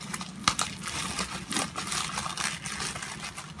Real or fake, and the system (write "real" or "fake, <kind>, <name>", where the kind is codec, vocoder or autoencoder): real